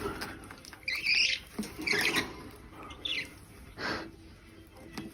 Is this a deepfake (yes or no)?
no